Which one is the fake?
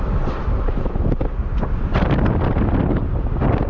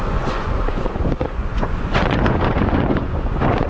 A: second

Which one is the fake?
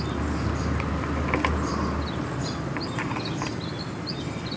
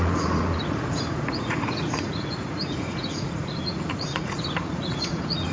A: second